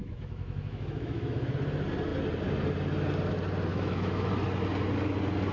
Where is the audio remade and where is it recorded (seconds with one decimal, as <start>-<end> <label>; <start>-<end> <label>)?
0.0-1.5 remade; 1.5-3.7 recorded; 3.7-4.3 remade; 4.3-5.5 recorded